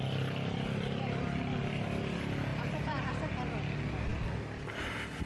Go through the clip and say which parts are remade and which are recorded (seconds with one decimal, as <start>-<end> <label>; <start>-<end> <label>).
0.0-2.5 recorded; 2.5-3.6 remade; 3.6-5.3 recorded